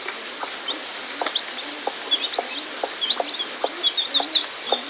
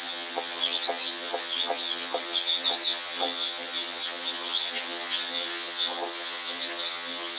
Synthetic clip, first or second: second